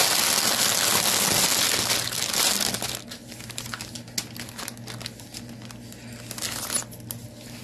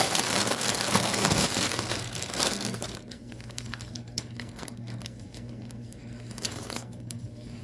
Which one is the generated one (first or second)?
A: second